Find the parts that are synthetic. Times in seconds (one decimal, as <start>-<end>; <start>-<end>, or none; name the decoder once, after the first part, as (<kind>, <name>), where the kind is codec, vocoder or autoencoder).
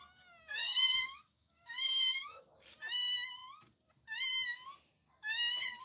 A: 0.6-2.4 (codec, DAC)